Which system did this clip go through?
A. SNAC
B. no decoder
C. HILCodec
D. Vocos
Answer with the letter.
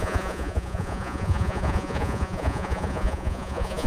D